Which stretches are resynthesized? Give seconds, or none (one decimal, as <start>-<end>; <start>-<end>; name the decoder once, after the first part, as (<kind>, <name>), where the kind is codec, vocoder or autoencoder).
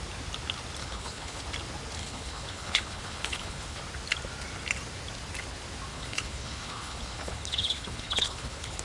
0.8-1.4 (codec, HILCodec); 2.0-3.8; 5.9-8.8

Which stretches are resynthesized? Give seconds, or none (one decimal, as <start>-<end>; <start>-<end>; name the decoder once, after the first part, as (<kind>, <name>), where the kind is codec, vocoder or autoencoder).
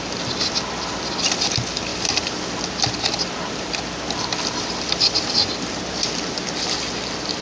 none